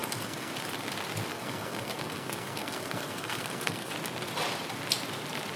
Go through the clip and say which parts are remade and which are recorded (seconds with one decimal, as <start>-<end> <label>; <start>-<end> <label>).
0.0-0.5 remade; 0.5-1.3 recorded; 1.3-3.9 remade; 3.9-5.6 recorded